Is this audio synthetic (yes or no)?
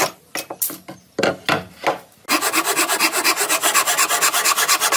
no